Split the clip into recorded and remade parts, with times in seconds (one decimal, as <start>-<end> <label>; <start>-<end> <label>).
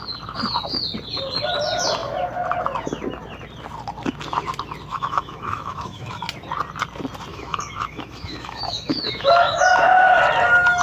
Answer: 0.0-4.9 recorded; 4.9-6.2 remade; 6.2-7.3 recorded; 7.3-10.2 remade; 10.2-10.8 recorded